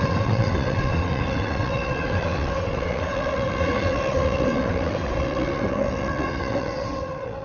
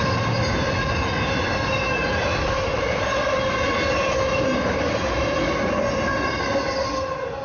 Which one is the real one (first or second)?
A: second